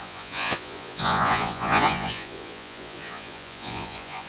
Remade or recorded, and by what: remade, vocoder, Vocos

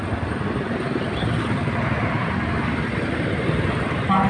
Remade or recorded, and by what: recorded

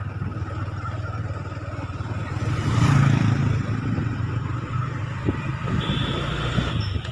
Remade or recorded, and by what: recorded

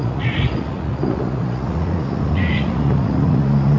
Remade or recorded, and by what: remade, vocoder, Vocos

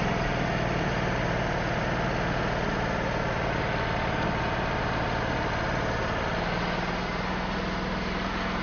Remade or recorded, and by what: recorded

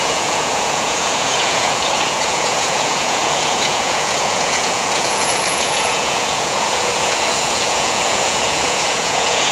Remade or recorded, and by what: remade, vocoder, Vocos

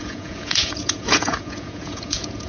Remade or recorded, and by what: remade, vocoder, Vocos